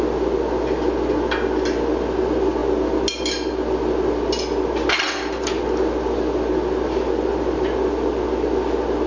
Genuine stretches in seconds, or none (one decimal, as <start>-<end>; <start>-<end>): 0.0-9.1